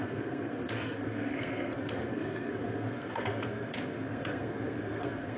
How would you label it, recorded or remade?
remade